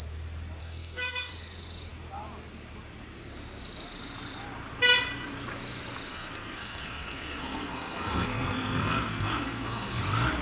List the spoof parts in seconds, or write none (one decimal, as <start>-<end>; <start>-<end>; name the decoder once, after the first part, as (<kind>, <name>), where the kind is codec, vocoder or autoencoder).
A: 0.6-1.3 (codec, SNAC); 6.1-10.0